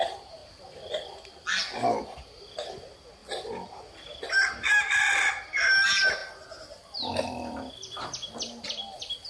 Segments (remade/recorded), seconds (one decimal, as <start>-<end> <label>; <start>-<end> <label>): 0.0-9.3 recorded

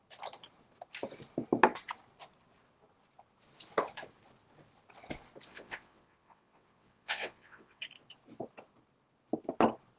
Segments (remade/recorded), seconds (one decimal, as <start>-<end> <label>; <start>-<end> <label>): 0.0-5.5 recorded; 5.5-7.8 remade; 7.8-10.0 recorded

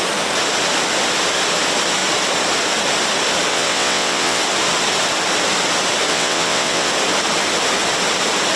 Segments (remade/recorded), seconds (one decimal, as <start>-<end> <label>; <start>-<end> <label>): 0.0-3.5 recorded; 3.5-4.4 remade; 4.4-6.1 recorded; 6.1-6.9 remade; 6.9-8.6 recorded

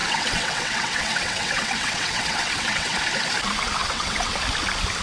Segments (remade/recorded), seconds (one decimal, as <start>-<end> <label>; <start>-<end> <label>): 0.0-3.0 remade; 3.0-3.8 recorded; 3.8-4.3 remade; 4.3-5.0 recorded

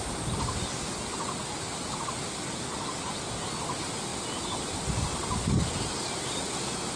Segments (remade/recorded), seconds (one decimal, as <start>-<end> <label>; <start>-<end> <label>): 0.0-7.0 recorded

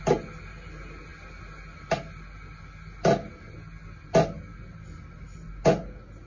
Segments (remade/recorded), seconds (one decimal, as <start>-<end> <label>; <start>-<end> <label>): 0.0-6.3 recorded

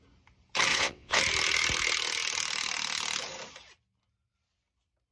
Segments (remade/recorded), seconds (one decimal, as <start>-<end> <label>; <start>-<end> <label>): 0.0-0.7 recorded; 0.7-1.2 remade; 1.2-5.1 recorded

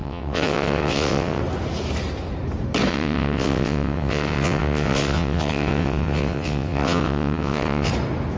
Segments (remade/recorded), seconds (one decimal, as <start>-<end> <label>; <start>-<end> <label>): 0.0-1.4 remade; 1.4-2.9 recorded; 2.9-7.9 remade; 7.9-8.4 recorded